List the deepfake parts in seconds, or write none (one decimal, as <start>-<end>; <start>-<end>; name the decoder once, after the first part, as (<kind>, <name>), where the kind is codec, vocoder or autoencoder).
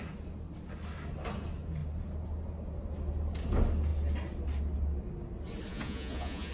5.7-6.5 (vocoder, Vocos)